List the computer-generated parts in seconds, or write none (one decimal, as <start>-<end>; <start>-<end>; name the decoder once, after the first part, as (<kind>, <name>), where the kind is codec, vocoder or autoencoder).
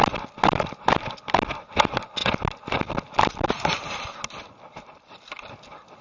none